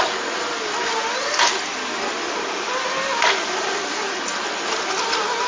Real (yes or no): yes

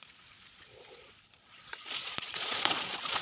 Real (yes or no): no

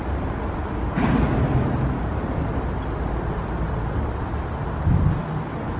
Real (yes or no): yes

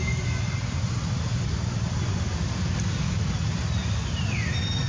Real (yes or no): yes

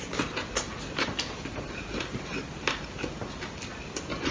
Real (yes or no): yes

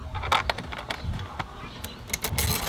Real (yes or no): yes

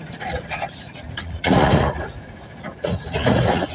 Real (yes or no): no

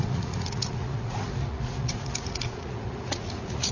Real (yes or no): no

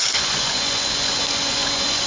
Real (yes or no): no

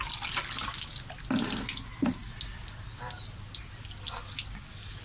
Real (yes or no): yes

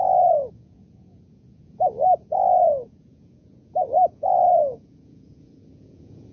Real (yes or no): no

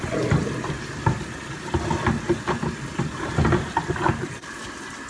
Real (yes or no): yes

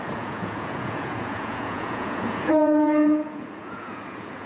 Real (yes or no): no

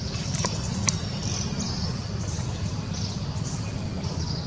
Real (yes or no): yes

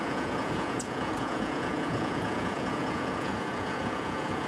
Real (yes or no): no